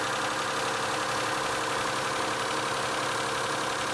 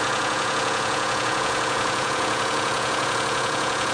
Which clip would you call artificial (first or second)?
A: second